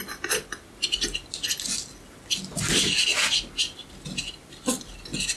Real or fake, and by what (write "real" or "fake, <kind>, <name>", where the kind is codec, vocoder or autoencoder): real